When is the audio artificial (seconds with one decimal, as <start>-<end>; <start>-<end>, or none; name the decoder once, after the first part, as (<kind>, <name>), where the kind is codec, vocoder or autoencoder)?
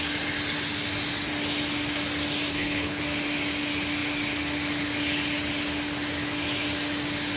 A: 2.5-3.0 (codec, HILCodec)